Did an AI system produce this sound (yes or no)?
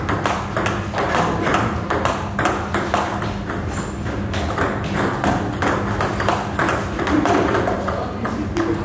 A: no